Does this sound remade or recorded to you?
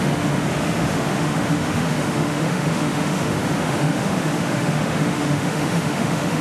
remade